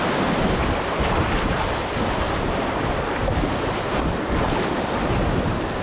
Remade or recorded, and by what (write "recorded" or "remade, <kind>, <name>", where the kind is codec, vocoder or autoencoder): recorded